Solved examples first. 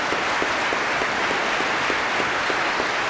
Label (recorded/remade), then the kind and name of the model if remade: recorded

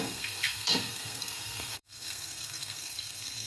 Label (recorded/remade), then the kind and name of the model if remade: remade, codec, SNAC